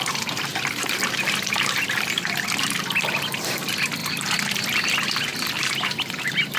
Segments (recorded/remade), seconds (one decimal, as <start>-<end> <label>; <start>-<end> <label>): 0.0-0.5 recorded; 0.5-3.5 remade; 3.5-5.3 recorded; 5.3-6.6 remade